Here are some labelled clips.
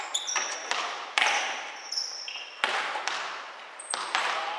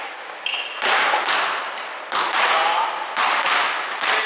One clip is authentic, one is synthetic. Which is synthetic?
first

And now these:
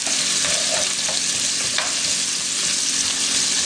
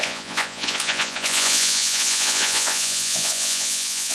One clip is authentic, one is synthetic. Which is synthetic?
second